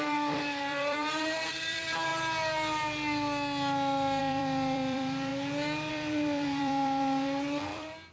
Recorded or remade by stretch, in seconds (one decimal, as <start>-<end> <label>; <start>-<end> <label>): 0.0-2.1 remade; 2.1-4.2 recorded; 4.2-5.3 remade; 5.3-5.9 recorded; 5.9-8.1 remade